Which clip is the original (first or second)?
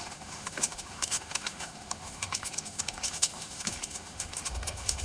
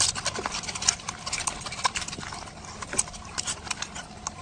second